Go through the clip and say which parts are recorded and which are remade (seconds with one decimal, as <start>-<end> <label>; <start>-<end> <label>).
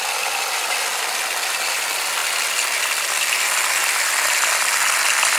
0.0-5.4 recorded